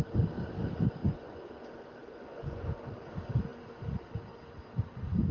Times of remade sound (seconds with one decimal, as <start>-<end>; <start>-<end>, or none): 1.0-1.5; 2.0-2.8